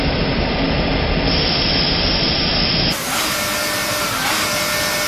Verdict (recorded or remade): recorded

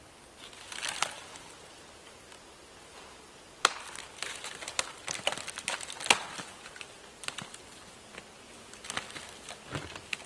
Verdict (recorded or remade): recorded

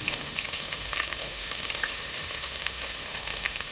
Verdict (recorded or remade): remade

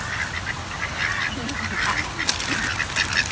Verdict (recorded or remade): recorded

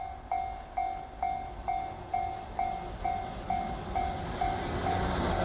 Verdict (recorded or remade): recorded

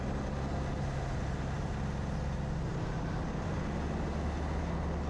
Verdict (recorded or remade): recorded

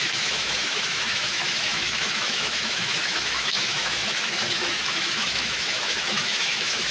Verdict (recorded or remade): remade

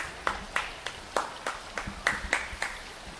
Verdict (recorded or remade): recorded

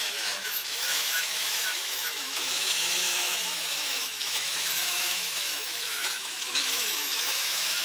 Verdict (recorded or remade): remade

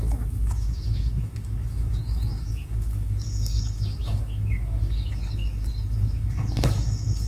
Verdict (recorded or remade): remade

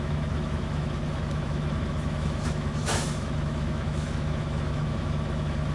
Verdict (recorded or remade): remade